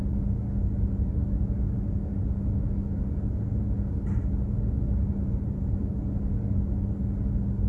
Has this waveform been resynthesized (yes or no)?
no